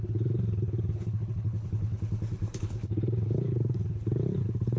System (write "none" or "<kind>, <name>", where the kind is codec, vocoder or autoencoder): codec, HILCodec